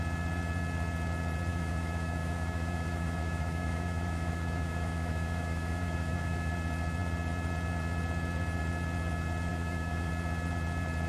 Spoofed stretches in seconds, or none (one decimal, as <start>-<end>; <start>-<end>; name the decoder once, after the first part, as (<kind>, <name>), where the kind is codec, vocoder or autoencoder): 1.5-6.5 (autoencoder, DAC-VAE); 9.5-10.1